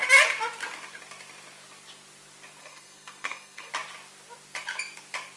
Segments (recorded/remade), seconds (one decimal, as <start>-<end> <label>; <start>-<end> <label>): 0.0-2.6 recorded; 2.6-3.7 remade; 3.7-5.4 recorded